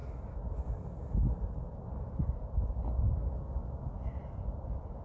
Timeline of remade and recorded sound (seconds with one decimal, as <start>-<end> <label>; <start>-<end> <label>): 0.0-5.0 recorded